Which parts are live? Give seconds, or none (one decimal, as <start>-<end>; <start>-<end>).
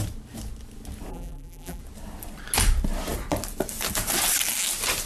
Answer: 0.0-1.1; 1.8-5.1